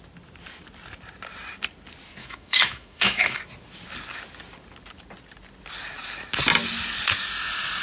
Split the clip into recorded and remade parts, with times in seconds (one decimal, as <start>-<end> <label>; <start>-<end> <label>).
0.0-2.2 recorded; 2.2-3.4 remade; 3.4-7.8 recorded